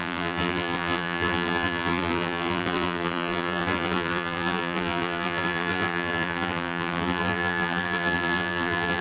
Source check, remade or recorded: remade